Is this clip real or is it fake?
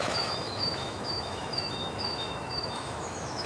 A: fake